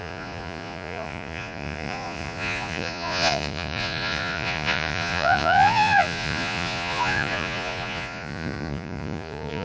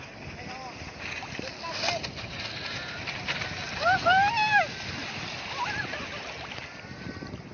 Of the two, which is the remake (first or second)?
first